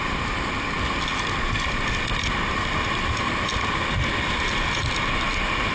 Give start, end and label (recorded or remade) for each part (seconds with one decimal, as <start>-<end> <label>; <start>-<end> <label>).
0.0-1.1 remade; 1.1-4.5 recorded; 4.5-5.7 remade